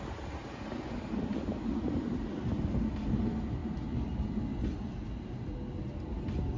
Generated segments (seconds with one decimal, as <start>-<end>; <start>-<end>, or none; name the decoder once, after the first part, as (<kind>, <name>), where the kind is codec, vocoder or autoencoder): none